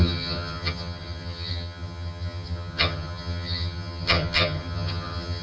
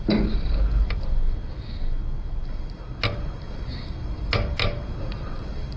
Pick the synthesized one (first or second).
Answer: first